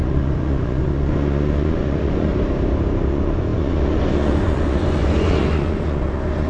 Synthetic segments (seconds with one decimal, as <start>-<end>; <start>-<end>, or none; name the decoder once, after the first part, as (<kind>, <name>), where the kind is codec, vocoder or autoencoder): 0.0-2.3 (vocoder, Vocos); 3.1-6.5